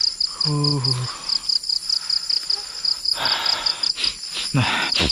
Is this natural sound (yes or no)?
yes